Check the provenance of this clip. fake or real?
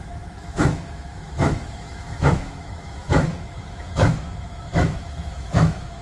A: fake